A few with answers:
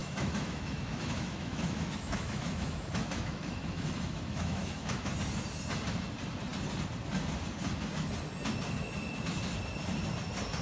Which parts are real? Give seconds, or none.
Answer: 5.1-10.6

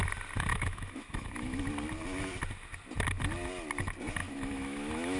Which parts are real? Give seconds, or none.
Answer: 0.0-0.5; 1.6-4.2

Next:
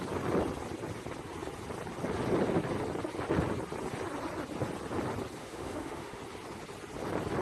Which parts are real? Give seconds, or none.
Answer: 0.0-5.4; 6.2-7.4

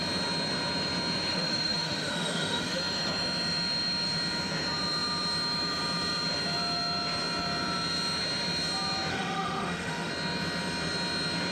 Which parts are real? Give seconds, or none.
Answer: 0.0-1.3; 2.8-9.1; 10.1-11.5